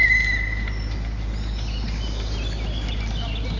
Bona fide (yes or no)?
yes